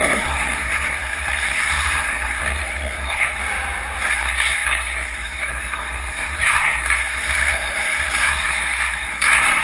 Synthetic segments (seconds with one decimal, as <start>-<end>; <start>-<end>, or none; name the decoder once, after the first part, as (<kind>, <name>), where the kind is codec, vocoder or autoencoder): 0.0-3.4 (codec, SNAC); 4.1-9.6